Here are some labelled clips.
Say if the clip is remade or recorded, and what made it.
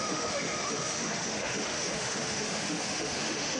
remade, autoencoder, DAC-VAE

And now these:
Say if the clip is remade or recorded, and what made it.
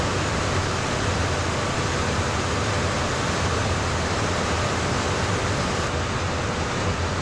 recorded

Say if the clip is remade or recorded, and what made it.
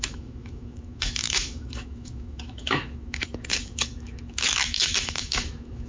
remade, autoencoder, DAC-VAE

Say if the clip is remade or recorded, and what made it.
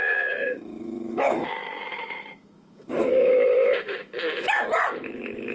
remade, autoencoder, DAC-VAE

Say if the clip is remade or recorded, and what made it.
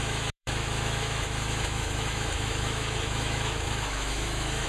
remade, autoencoder, DAC-VAE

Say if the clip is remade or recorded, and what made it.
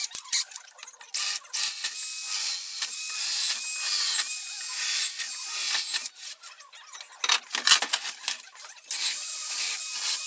recorded